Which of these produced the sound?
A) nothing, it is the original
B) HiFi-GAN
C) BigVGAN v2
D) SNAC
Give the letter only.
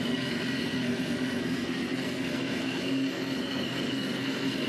D